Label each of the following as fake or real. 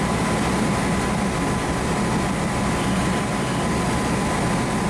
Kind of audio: real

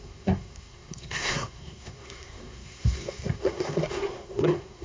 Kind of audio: fake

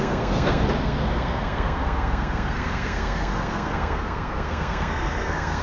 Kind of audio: fake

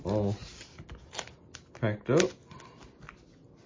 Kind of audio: real